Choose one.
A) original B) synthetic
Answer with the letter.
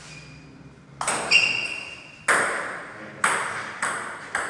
A